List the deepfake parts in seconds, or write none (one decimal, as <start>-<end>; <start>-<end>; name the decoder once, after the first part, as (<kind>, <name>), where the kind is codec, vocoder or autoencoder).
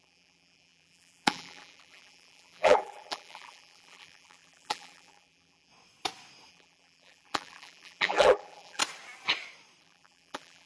0.0-5.7 (vocoder, BigVGAN v2); 6.5-8.8; 9.8-10.7